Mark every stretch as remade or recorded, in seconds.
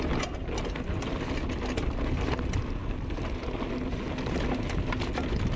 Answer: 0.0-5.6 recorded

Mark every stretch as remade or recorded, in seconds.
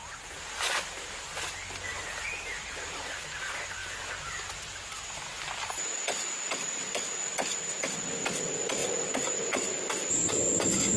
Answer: 0.0-1.9 recorded; 1.9-2.7 remade; 2.7-11.0 recorded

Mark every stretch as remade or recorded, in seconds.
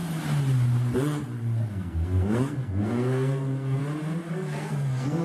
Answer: 0.0-1.7 recorded; 1.7-3.8 remade; 3.8-4.3 recorded; 4.3-5.2 remade